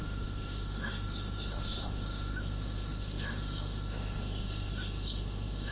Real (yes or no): no